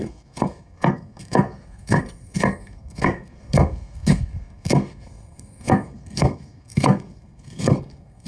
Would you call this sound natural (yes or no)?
no